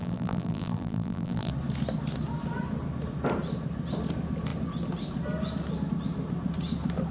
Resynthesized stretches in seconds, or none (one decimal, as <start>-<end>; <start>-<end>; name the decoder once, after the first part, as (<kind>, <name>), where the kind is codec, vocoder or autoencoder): 0.0-1.5 (vocoder, BigVGAN v2)

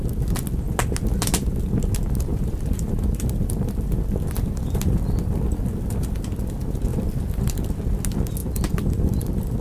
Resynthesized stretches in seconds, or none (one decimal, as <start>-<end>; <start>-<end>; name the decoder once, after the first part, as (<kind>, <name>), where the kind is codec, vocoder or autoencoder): 2.3-6.2 (vocoder, BigVGAN v2); 6.9-7.6

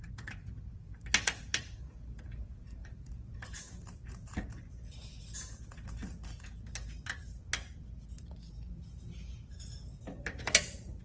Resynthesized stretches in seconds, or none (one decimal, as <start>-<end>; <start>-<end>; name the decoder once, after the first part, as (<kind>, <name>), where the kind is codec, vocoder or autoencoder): 0.0-5.1 (vocoder, BigVGAN v2); 10.0-11.0

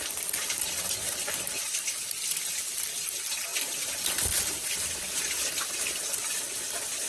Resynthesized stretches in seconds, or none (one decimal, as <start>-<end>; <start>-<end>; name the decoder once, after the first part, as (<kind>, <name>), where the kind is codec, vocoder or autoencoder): 0.0-7.1 (vocoder, BigVGAN v2)

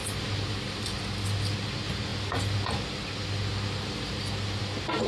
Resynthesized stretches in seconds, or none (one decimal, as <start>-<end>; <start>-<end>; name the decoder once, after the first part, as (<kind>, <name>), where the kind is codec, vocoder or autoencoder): 0.0-1.0 (vocoder, BigVGAN v2)

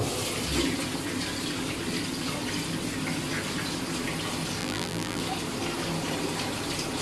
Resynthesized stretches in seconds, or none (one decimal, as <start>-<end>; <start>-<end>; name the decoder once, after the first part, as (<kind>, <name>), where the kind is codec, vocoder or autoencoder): 4.6-5.2 (vocoder, BigVGAN v2)